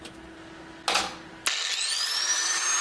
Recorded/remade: recorded